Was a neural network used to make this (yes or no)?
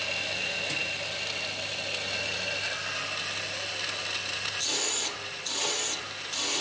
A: no